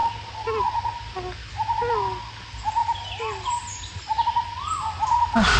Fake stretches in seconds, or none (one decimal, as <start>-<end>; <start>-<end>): none

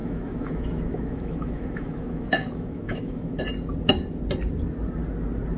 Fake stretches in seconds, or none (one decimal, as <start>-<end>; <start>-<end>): 0.0-3.4

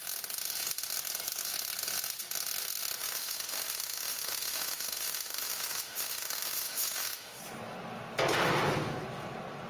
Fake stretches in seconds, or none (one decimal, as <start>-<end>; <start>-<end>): 3.0-7.4

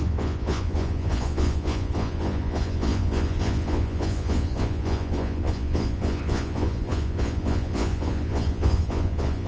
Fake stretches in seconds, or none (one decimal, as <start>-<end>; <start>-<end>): 0.0-9.5

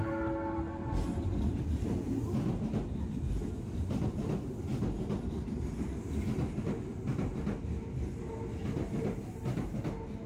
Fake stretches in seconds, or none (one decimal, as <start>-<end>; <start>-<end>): none

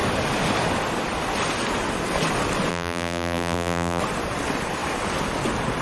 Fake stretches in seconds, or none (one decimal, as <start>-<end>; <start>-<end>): 2.7-4.0